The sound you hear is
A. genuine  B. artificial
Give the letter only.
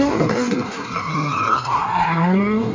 B